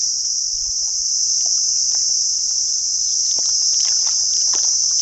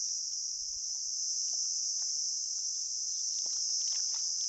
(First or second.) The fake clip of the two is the first